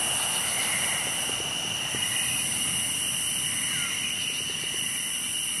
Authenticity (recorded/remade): recorded